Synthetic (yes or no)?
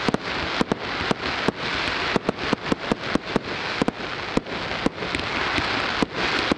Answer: no